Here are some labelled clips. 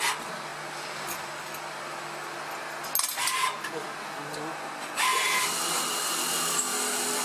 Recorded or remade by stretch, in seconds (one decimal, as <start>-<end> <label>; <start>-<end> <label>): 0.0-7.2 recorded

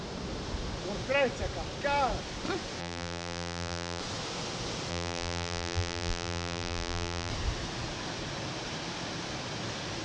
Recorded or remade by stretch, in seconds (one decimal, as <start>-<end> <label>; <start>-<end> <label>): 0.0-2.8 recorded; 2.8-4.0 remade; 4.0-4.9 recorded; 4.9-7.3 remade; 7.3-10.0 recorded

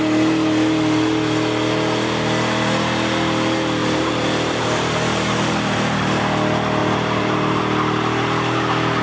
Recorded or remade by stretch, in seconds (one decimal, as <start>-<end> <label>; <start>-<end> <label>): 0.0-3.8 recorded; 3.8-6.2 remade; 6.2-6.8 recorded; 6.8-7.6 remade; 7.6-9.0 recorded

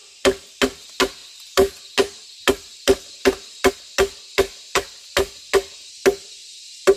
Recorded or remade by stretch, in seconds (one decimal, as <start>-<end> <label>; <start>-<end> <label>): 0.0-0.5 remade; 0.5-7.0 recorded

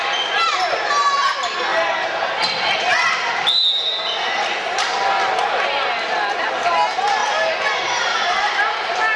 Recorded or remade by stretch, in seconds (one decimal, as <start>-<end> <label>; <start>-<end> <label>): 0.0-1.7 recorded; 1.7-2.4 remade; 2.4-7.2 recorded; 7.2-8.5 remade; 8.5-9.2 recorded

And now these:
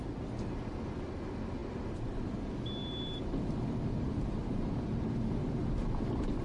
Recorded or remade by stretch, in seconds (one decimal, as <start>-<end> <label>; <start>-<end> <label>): 0.0-1.6 recorded; 1.6-2.4 remade; 2.4-2.8 recorded; 2.8-5.1 remade; 5.1-5.6 recorded; 5.6-6.4 remade

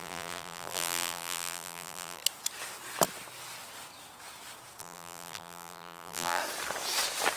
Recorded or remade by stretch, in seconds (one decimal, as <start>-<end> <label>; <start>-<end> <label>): 0.0-2.2 remade; 2.2-4.8 recorded; 4.8-6.4 remade; 6.4-7.4 recorded

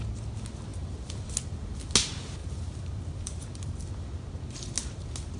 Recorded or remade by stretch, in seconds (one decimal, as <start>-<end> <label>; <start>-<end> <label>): 0.0-0.7 recorded; 0.7-1.3 remade; 1.3-2.4 recorded; 2.4-3.9 remade; 3.9-5.4 recorded